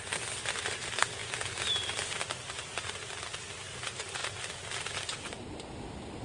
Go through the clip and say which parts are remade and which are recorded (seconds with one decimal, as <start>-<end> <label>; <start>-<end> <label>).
0.0-6.2 recorded